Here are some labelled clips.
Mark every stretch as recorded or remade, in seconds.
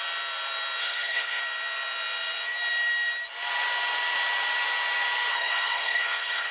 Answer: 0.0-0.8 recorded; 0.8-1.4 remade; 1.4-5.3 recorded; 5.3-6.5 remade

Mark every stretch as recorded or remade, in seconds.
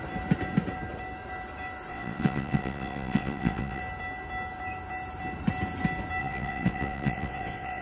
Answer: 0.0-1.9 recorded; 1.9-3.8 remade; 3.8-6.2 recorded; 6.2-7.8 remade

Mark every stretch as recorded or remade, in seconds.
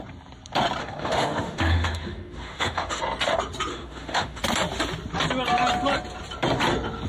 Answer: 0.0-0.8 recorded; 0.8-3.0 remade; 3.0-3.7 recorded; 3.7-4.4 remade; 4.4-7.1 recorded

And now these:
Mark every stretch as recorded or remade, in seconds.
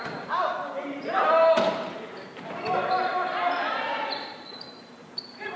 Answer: 0.0-3.1 remade; 3.1-3.7 recorded; 3.7-5.6 remade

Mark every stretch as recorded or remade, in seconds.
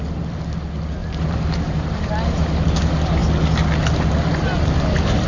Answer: 0.0-1.0 recorded; 1.0-2.1 remade; 2.1-5.3 recorded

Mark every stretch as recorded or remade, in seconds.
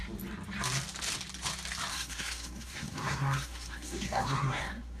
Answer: 0.0-1.9 recorded; 1.9-5.0 remade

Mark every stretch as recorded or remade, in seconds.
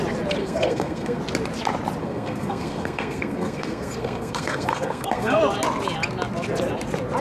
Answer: 0.0-0.4 recorded; 0.4-1.2 remade; 1.2-2.0 recorded; 2.0-5.4 remade; 5.4-7.2 recorded